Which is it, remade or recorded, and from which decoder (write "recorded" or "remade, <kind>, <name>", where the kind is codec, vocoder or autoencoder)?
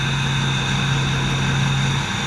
recorded